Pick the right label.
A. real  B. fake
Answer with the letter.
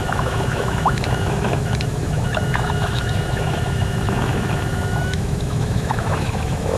B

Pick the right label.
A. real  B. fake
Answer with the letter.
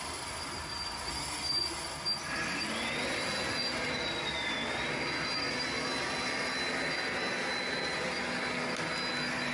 A